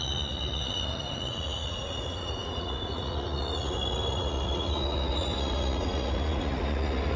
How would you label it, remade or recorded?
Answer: remade